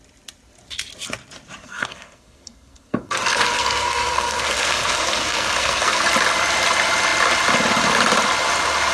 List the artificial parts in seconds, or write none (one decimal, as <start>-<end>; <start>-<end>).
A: 1.6-6.0